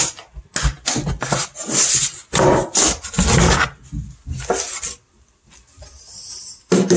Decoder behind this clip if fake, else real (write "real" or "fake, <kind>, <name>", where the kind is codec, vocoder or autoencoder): real